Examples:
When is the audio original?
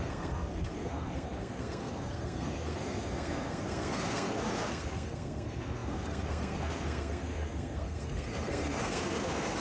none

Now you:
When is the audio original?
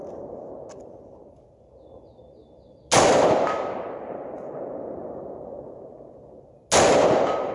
0.0-7.5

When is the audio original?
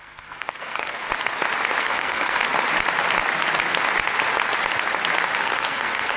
1.0-1.8; 2.4-5.4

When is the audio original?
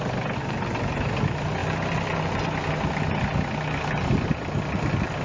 0.0-5.2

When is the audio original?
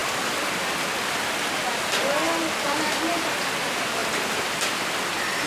0.0-5.5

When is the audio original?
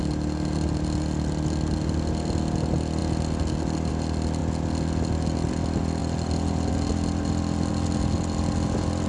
0.0-9.1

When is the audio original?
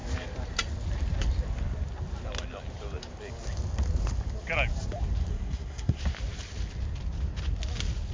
0.0-5.3; 6.0-8.1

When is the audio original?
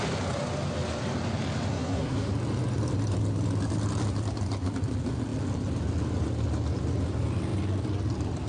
0.0-1.7; 2.3-8.5